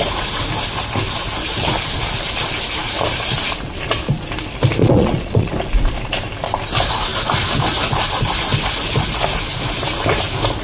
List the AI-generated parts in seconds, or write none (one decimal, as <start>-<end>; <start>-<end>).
4.8-5.5